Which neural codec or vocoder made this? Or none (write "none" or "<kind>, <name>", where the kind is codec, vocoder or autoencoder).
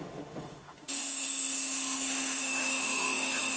autoencoder, DAC-VAE